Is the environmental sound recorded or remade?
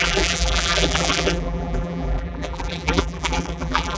remade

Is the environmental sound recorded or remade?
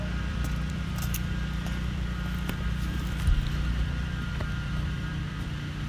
remade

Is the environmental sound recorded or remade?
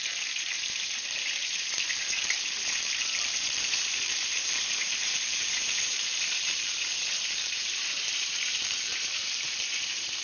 remade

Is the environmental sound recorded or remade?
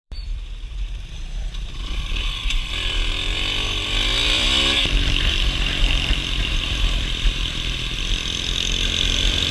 remade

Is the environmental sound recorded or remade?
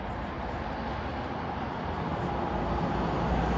recorded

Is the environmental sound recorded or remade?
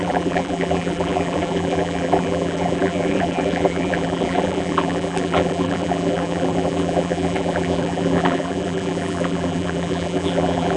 remade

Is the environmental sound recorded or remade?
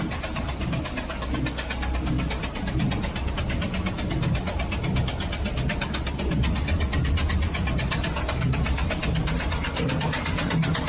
recorded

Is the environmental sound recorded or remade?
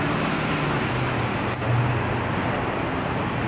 recorded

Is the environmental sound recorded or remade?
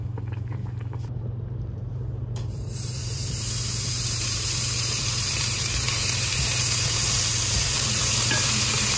remade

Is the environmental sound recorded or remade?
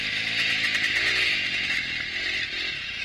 recorded